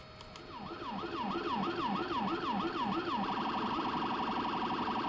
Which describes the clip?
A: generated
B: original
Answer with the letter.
B